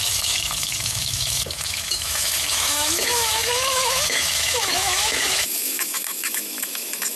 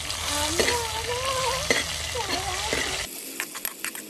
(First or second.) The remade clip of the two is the first